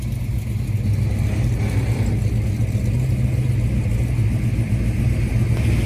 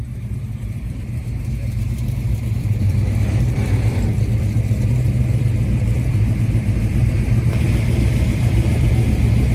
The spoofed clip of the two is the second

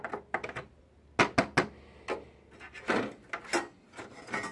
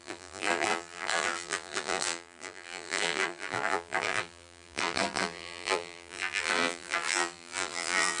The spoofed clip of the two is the second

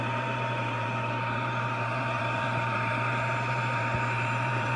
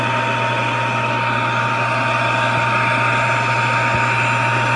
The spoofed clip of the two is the first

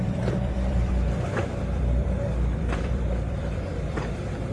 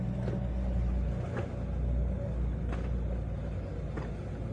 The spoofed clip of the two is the first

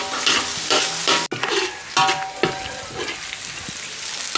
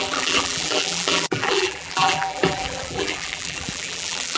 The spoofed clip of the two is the second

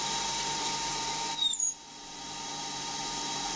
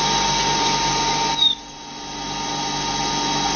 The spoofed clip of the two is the first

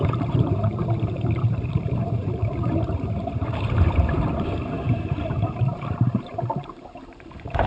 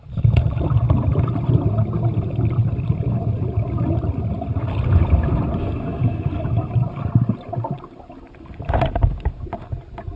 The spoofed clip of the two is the first